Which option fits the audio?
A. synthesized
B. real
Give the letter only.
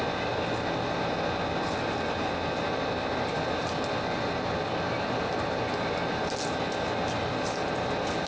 B